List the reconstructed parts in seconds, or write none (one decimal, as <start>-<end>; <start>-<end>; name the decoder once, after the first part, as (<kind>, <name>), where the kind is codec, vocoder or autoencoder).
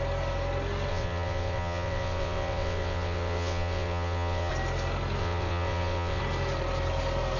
0.9-4.5 (vocoder, WaveNeXt); 5.2-6.2